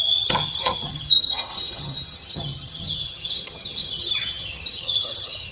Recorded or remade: remade